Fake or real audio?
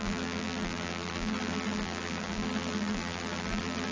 fake